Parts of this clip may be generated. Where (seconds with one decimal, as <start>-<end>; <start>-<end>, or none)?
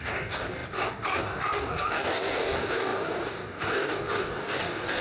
0.0-5.0